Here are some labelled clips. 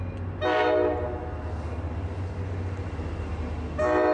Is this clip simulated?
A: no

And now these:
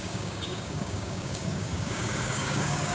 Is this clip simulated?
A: yes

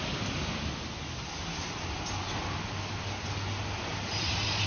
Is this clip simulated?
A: no